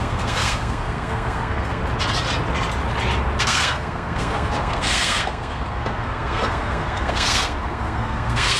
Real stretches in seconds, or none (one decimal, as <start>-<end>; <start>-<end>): 1.8-3.4